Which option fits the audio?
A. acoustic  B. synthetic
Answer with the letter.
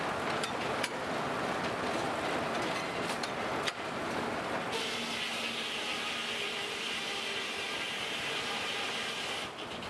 A